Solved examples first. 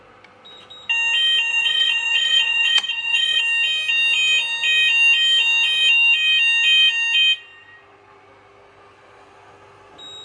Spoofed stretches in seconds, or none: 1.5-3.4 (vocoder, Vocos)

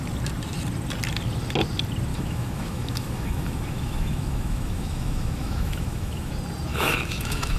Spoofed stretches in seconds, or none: 2.1-6.3 (autoencoder, DAC-VAE); 6.7-7.6

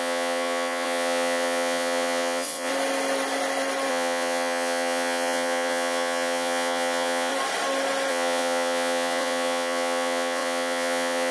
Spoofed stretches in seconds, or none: 0.0-2.7 (vocoder, WaveNeXt); 3.9-7.3; 8.1-11.3

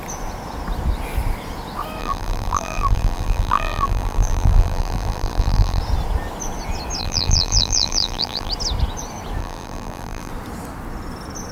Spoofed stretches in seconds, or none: 2.0-5.8 (vocoder, BigVGAN v2); 7.0-8.5; 9.4-10.3